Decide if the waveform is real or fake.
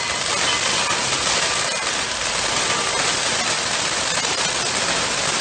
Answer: real